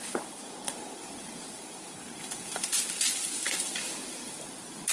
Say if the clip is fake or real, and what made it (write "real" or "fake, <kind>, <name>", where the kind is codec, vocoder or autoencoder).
fake, vocoder, BigVGAN v2